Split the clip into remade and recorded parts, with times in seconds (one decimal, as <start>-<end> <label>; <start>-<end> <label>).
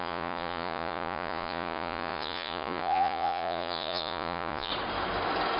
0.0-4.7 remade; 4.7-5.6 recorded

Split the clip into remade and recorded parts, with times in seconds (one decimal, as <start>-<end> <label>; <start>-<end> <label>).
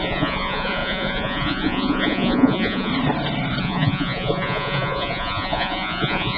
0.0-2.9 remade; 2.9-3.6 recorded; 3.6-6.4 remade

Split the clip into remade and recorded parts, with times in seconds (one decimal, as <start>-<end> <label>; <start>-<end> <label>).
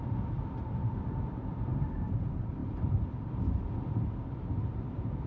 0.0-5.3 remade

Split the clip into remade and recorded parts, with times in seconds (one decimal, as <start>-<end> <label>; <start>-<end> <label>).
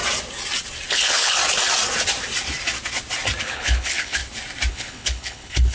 0.0-0.9 recorded; 0.9-1.4 remade; 1.4-3.4 recorded; 3.4-4.2 remade; 4.2-4.7 recorded; 4.7-5.7 remade